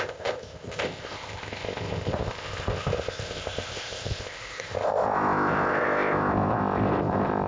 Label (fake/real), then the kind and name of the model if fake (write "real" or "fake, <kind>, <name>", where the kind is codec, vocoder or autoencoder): fake, codec, ZipCodec